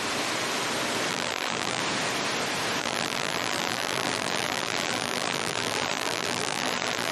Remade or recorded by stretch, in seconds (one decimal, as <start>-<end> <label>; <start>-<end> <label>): 0.0-1.1 recorded; 1.1-1.8 remade; 1.8-2.8 recorded; 2.8-7.1 remade